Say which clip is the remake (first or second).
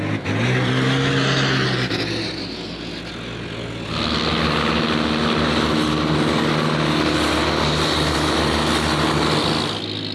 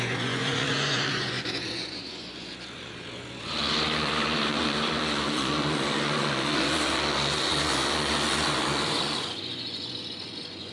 second